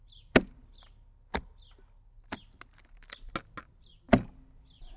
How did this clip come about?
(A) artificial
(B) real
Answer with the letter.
B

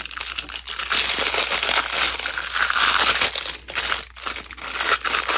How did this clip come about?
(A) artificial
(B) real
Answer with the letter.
B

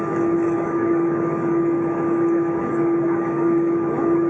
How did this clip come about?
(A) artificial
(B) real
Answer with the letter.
A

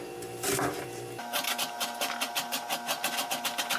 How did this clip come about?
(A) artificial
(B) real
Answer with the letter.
B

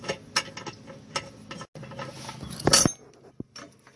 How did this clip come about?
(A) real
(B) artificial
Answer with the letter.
A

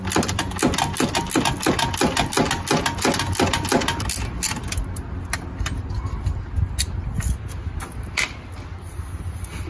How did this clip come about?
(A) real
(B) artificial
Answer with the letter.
A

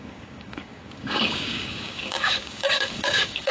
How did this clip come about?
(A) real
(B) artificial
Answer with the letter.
B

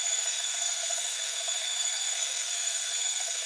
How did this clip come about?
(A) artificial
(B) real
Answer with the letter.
A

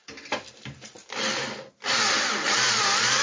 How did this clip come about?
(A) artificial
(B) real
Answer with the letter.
B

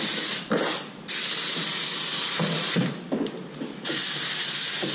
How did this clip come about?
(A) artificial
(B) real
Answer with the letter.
B